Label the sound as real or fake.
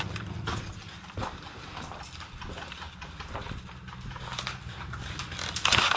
real